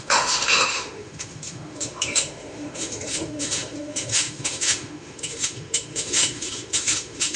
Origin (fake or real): fake